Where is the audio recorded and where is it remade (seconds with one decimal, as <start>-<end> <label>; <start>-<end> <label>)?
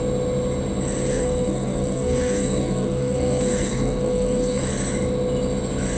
0.0-1.1 recorded; 1.1-4.7 remade; 4.7-6.0 recorded